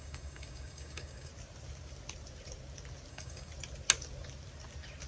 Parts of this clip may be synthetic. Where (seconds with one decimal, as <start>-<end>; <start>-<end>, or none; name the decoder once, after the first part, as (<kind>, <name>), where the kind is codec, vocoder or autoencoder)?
0.0-1.3 (codec, DAC); 3.1-3.5